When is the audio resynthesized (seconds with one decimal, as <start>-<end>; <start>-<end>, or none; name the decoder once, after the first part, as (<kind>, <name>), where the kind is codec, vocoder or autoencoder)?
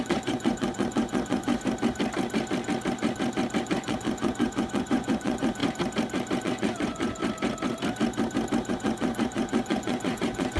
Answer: 0.0-1.5 (vocoder, Vocos); 3.6-5.6; 6.4-7.2; 8.7-10.6